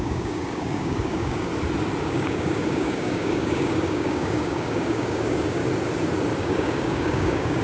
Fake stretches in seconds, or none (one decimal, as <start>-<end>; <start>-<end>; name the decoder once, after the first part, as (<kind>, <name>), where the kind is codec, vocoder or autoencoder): 0.0-1.5 (codec, DAC); 2.0-5.6; 6.4-7.6

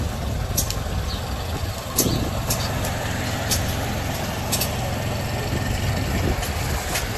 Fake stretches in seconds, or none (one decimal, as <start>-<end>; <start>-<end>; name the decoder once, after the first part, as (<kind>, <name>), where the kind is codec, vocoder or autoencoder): 1.6-5.9 (vocoder, BigVGAN v2)